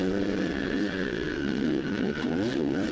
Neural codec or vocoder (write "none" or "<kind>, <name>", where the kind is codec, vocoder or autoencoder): vocoder, WaveNeXt